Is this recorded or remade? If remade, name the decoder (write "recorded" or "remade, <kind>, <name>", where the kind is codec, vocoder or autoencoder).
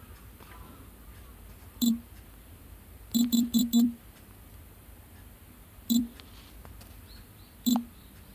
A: remade, vocoder, BigVGAN v2